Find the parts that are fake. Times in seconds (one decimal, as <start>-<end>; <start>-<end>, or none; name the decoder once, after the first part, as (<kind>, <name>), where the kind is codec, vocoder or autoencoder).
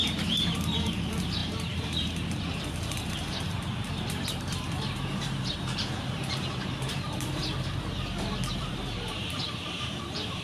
0.0-7.4 (vocoder, BigVGAN v2); 8.5-10.4